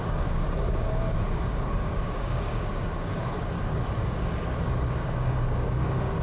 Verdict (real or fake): fake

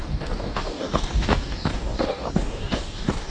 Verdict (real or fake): fake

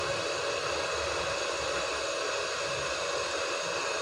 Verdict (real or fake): real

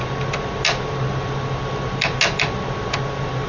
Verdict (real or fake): real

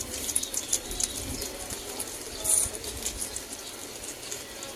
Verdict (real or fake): real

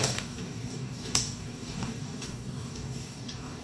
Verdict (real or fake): fake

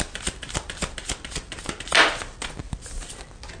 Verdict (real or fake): real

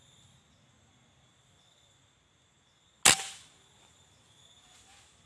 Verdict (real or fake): real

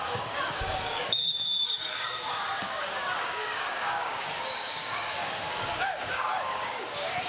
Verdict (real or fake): fake